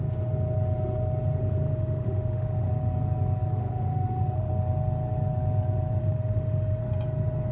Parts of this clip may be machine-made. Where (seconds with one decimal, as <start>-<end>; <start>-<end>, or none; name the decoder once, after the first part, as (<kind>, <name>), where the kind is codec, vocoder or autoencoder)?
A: 1.4-2.7 (autoencoder, DAC-VAE); 3.6-4.5; 6.0-6.8